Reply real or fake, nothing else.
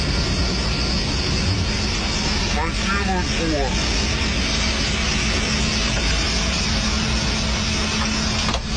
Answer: real